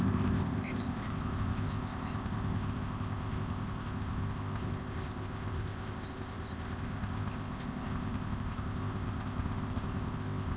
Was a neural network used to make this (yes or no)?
yes